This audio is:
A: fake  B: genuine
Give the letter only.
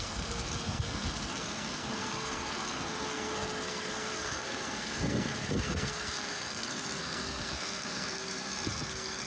A